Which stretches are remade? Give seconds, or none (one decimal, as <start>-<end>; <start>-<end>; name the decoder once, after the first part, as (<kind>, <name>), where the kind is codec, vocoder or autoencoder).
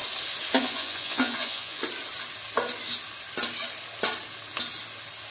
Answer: 0.6-1.8 (vocoder, Vocos)